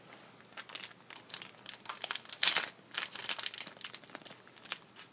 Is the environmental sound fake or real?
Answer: real